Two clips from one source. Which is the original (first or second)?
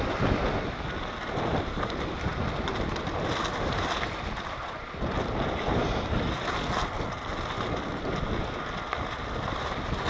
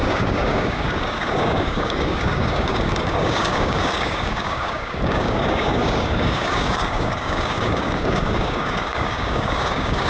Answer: first